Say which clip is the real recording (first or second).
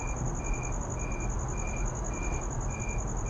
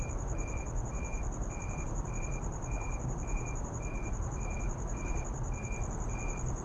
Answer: first